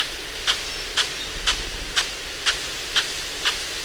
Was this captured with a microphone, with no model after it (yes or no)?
yes